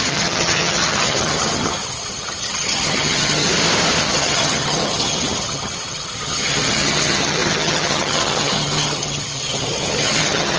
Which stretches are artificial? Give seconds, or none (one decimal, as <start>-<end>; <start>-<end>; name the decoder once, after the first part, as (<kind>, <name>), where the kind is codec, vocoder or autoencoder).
0.0-3.5 (vocoder, HiFi-GAN); 4.0-10.6

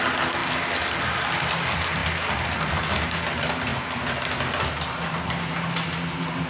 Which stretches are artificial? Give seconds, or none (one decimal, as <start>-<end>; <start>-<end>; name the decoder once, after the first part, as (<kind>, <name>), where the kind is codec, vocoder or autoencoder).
none

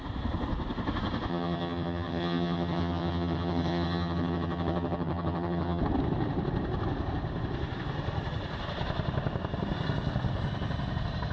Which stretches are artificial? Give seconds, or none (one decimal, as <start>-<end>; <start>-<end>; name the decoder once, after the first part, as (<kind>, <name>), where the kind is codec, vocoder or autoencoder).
1.3-5.8 (vocoder, HiFi-GAN)

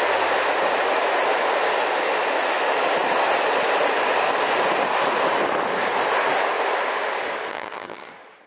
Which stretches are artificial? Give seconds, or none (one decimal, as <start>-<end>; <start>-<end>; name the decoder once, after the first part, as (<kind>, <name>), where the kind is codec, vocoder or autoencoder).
7.5-8.1 (vocoder, HiFi-GAN)